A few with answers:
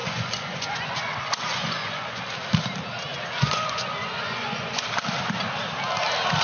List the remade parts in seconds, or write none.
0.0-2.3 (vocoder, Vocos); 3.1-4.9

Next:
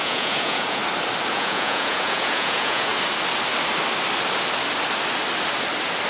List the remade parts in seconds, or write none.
0.0-0.8 (vocoder, Vocos); 1.3-2.9

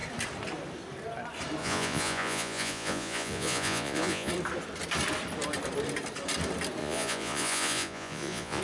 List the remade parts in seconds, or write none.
1.6-4.3 (vocoder, Vocos); 6.8-8.6

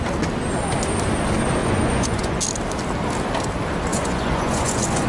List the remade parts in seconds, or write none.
1.6-2.4 (vocoder, Vocos); 3.9-5.1

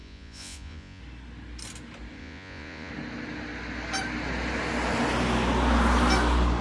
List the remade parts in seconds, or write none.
0.0-1.0 (vocoder, Vocos); 2.2-2.9

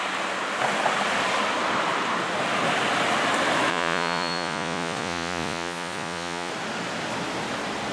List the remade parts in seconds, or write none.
3.7-6.5 (vocoder, Vocos)